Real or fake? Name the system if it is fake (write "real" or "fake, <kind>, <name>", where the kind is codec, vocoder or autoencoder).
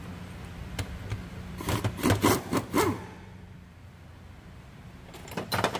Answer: fake, vocoder, BigVGAN v2